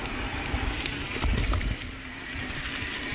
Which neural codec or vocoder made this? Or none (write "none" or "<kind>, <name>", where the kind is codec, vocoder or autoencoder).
none